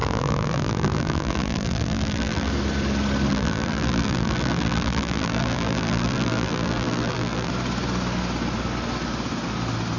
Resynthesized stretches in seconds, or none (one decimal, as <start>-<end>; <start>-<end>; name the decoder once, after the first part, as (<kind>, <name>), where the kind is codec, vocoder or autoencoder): 0.0-2.5 (vocoder, BigVGAN v2); 3.3-7.5